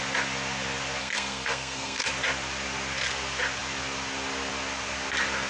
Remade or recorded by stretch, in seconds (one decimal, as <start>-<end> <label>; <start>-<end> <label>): 0.0-1.0 recorded; 1.0-2.1 remade; 2.1-5.5 recorded